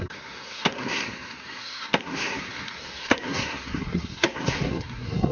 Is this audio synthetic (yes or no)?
yes